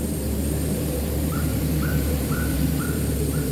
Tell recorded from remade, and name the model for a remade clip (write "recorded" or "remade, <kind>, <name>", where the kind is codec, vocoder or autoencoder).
remade, vocoder, BigVGAN v2